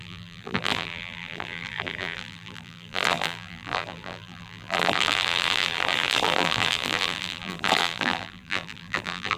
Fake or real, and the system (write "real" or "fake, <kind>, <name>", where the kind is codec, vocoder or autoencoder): fake, vocoder, BigVGAN v2